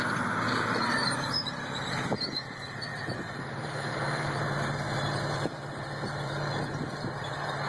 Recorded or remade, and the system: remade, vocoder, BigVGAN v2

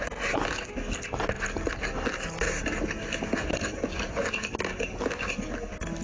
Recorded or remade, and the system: recorded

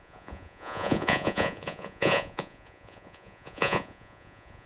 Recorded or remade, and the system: remade, vocoder, Vocos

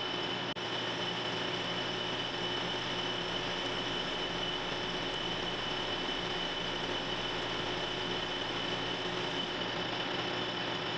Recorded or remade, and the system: recorded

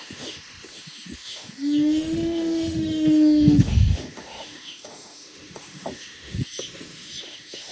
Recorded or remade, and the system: remade, autoencoder, DAC-VAE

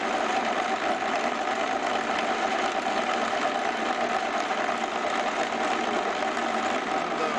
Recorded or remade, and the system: recorded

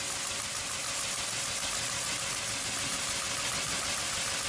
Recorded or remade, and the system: recorded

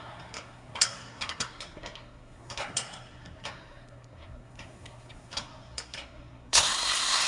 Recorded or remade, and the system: remade, codec, SNAC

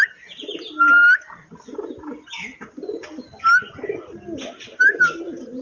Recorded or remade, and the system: recorded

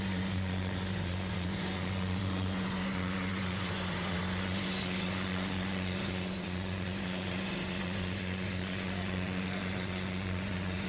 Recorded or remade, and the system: remade, vocoder, Vocos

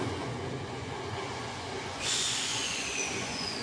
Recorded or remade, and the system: remade, vocoder, Vocos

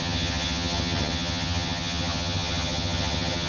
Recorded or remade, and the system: remade, vocoder, HiFi-GAN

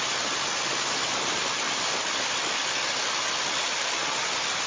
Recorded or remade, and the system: recorded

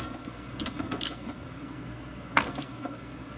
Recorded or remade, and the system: remade, codec, SNAC